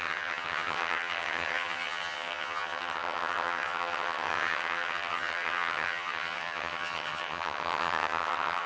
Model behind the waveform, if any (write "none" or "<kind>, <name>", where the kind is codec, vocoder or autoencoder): vocoder, HiFi-GAN